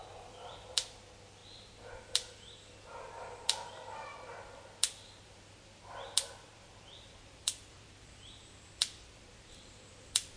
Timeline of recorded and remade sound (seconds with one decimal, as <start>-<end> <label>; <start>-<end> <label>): 0.0-1.4 remade; 1.4-6.5 recorded; 6.5-10.4 remade